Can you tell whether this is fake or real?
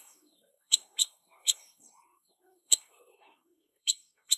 fake